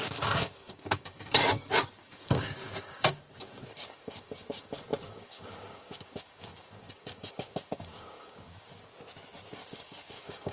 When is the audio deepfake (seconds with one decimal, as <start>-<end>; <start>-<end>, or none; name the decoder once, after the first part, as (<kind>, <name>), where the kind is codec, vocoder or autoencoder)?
0.0-8.9 (codec, DAC); 9.5-10.5